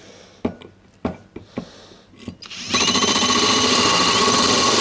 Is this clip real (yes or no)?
yes